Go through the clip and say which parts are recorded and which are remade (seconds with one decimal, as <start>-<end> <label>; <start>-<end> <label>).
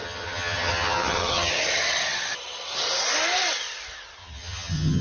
0.0-1.5 remade; 1.5-4.2 recorded; 4.2-5.0 remade